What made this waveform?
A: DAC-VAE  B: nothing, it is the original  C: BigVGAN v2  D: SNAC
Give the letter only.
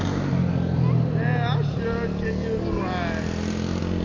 B